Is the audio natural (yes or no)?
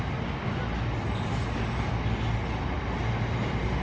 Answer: yes